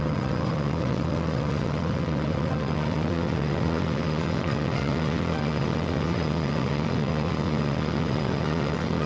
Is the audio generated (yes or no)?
yes